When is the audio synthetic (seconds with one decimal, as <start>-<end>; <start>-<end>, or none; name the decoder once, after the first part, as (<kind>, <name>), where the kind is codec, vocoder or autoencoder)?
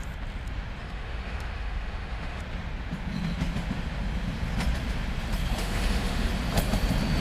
0.8-2.4 (autoencoder, DAC-VAE); 5.6-6.3